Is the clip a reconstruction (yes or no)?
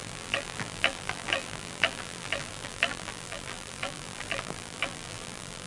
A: yes